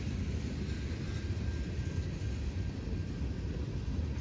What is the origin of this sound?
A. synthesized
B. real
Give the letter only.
B